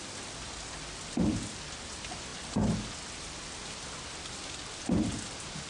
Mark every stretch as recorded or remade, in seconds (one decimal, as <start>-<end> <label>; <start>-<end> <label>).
0.0-5.7 recorded